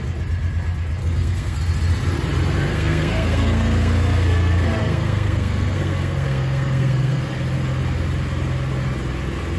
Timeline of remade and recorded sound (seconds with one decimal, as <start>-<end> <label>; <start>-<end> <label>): 0.0-1.0 recorded; 1.0-1.6 remade; 1.6-2.7 recorded; 2.7-7.2 remade; 7.2-9.6 recorded